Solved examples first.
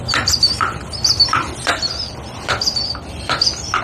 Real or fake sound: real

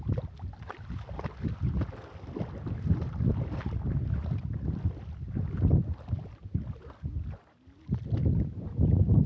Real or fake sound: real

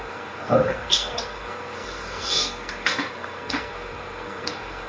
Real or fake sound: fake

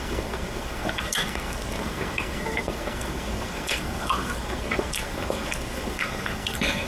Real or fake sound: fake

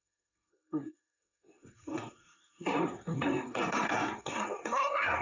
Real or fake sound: fake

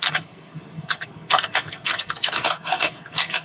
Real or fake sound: fake